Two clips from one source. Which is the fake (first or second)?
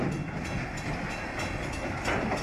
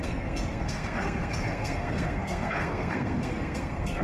second